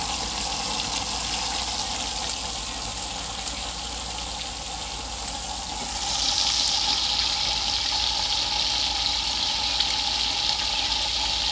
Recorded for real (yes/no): yes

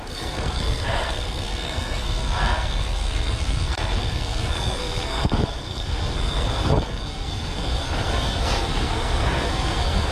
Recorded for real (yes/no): no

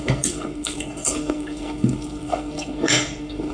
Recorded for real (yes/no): no